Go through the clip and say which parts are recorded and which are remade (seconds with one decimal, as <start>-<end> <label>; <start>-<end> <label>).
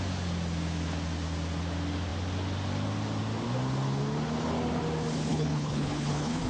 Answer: 0.0-5.3 recorded; 5.3-6.5 remade